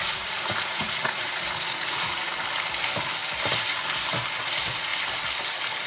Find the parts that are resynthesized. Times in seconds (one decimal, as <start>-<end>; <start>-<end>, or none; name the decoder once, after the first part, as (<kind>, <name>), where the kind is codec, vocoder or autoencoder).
0.0-2.3 (vocoder, Vocos); 4.4-4.9